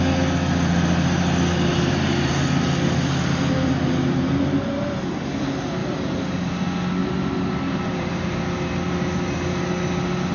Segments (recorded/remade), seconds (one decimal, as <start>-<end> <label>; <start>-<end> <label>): 0.0-1.7 recorded; 1.7-2.3 remade; 2.3-5.8 recorded; 5.8-6.5 remade; 6.5-7.0 recorded; 7.0-8.4 remade; 8.4-10.3 recorded